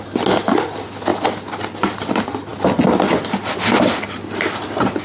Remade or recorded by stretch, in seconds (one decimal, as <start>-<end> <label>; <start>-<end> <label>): 0.0-5.0 recorded